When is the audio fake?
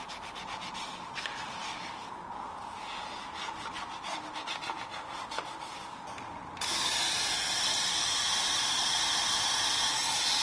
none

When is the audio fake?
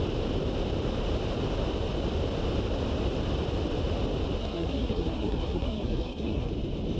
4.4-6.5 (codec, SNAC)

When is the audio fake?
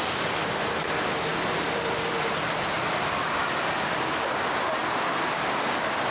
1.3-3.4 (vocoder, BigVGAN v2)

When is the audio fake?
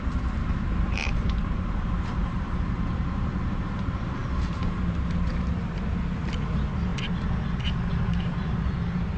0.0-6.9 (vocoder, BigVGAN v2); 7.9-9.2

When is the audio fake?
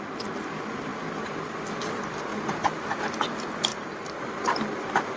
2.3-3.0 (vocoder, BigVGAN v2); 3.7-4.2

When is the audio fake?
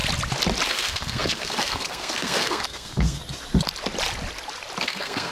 0.7-3.2 (codec, SNAC); 4.8-5.3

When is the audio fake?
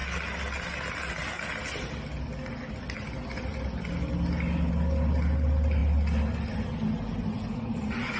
none